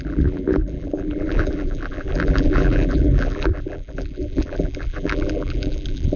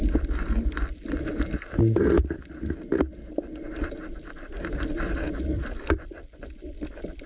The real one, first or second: second